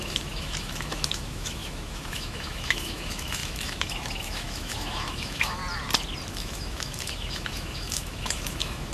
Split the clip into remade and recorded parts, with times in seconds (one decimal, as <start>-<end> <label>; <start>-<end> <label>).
0.0-5.6 remade; 5.6-6.3 recorded; 6.3-8.9 remade